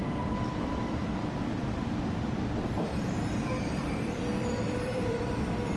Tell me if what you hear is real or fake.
fake